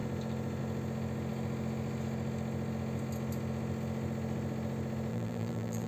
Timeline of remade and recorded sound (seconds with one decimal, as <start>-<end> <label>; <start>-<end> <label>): 0.0-5.1 recorded; 5.1-5.9 remade